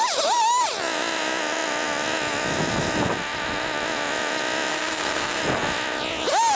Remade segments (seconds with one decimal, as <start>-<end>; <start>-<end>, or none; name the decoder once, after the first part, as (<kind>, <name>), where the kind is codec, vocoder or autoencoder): 4.7-5.4 (codec, SNAC)